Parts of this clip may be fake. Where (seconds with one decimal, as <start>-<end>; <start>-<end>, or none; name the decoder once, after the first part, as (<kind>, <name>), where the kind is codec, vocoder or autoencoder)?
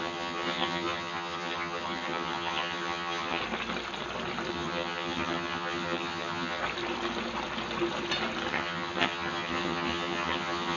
0.0-3.4 (vocoder, HiFi-GAN); 4.5-6.6; 8.5-10.8